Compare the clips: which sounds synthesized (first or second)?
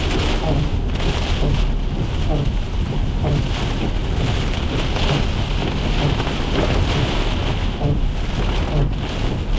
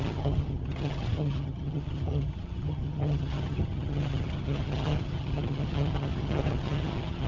second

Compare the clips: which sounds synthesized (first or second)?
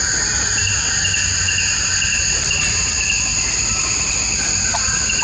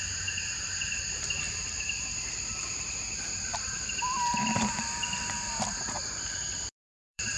second